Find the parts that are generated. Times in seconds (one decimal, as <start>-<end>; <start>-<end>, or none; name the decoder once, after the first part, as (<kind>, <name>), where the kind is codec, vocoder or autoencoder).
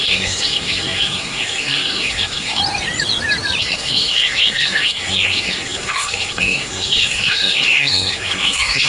0.0-2.6 (codec, SNAC); 3.6-8.9